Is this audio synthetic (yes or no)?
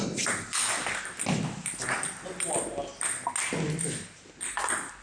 no